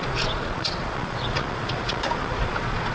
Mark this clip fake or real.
fake